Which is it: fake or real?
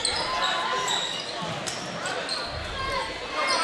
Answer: real